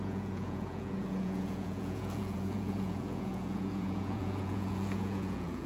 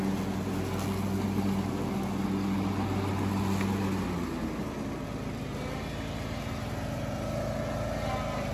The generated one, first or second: first